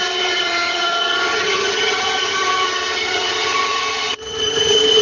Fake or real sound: fake